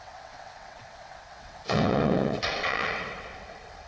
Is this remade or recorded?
remade